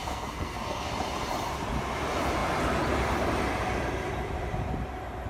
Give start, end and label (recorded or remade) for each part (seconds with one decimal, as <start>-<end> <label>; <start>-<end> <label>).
0.0-0.9 remade; 0.9-5.3 recorded